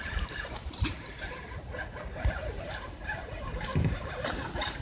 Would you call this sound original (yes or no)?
no